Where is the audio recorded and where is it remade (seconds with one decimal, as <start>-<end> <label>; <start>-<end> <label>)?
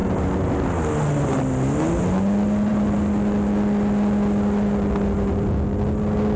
0.0-6.4 recorded